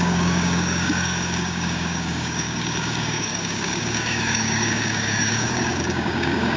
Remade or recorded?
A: remade